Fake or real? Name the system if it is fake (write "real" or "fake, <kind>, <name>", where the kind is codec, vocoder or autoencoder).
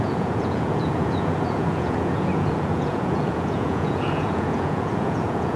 fake, vocoder, Vocos